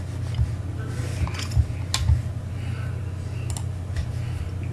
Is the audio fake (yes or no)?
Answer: no